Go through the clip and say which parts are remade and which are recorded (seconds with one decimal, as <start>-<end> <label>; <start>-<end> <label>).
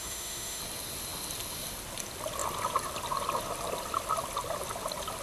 0.0-0.6 remade; 0.6-5.2 recorded